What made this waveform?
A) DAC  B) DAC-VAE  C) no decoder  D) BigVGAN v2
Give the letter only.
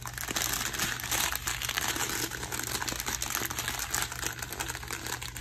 C